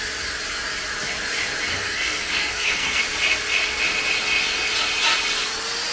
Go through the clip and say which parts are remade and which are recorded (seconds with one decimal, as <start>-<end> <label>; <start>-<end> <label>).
0.0-1.7 recorded; 1.7-3.0 remade; 3.0-5.9 recorded